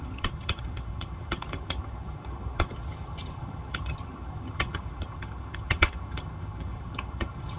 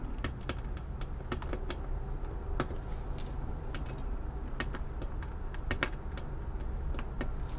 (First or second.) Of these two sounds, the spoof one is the first